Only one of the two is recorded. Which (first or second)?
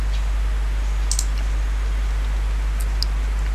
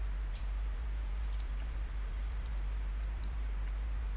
first